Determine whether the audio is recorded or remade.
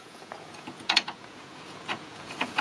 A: remade